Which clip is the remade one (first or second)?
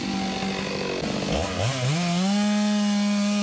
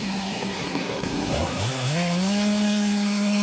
second